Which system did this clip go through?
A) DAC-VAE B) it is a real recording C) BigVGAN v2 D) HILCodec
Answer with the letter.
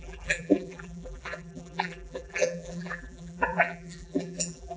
C